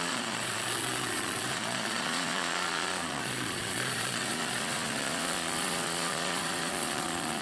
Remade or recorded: remade